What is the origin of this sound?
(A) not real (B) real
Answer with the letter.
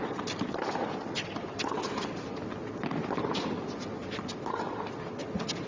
B